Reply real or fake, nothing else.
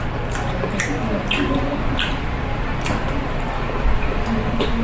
real